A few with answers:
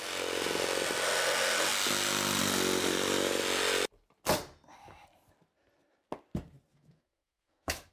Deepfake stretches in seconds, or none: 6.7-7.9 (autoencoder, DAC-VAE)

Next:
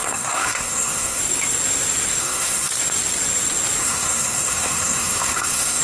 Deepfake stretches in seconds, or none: 0.0-1.2 (codec, SNAC); 2.2-2.7; 3.8-5.8

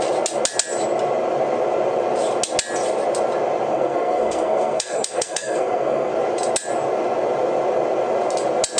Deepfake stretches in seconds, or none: 3.7-6.1 (codec, SNAC)

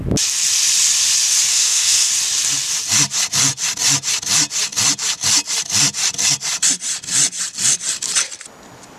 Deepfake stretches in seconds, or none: 1.5-2.1 (autoencoder, DAC-VAE)